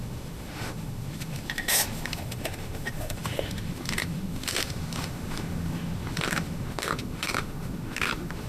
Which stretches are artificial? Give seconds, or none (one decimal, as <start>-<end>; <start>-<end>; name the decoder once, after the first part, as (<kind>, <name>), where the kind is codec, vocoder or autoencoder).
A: 0.0-8.5 (autoencoder, DAC-VAE)